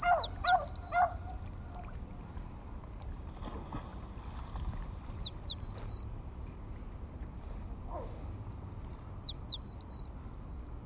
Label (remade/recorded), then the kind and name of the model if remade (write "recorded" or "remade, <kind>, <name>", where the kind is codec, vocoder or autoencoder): recorded